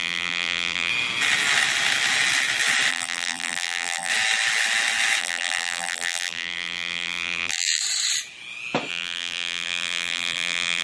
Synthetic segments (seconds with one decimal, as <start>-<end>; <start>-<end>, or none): 0.0-0.9; 2.9-4.1; 5.2-7.8; 8.9-10.8